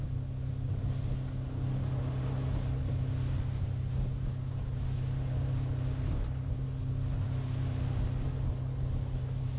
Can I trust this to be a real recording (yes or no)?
yes